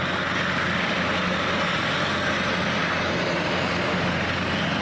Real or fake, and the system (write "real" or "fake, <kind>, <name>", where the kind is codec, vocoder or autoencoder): real